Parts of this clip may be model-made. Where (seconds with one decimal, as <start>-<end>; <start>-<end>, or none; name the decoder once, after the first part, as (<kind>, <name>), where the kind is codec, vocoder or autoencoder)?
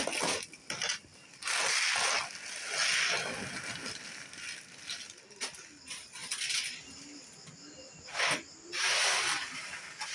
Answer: none